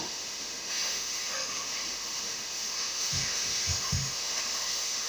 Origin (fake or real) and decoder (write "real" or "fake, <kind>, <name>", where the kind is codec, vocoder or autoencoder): fake, autoencoder, DAC-VAE